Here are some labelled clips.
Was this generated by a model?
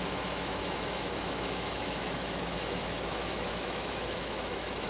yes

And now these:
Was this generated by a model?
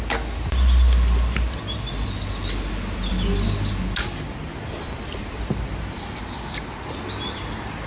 no